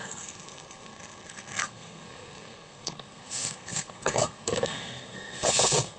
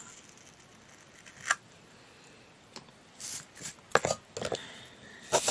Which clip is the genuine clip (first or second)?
second